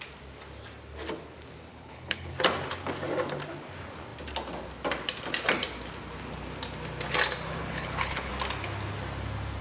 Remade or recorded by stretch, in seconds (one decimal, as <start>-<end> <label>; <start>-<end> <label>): 0.0-1.7 recorded; 1.7-2.3 remade; 2.3-7.6 recorded; 7.6-8.3 remade; 8.3-9.6 recorded